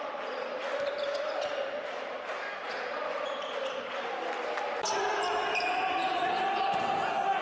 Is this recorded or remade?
recorded